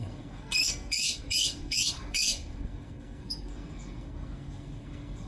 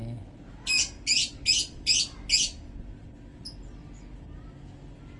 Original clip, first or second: second